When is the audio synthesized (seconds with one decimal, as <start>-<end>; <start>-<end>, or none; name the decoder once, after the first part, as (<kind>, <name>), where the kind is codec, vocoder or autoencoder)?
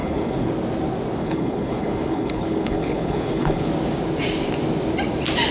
0.0-0.5 (codec, HILCodec); 1.2-3.7